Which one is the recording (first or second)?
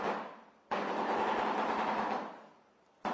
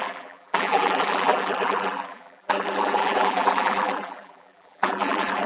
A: first